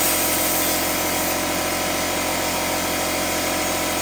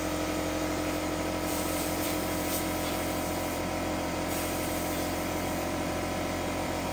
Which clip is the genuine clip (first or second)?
first